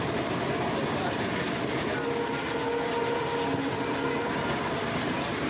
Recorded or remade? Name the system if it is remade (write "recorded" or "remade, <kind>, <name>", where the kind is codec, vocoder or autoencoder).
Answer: recorded